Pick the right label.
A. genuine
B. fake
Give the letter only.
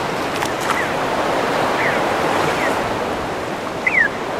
A